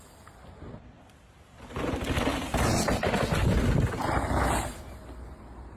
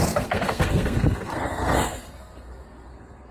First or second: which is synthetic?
second